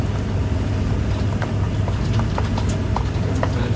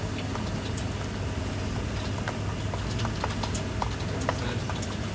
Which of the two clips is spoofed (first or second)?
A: first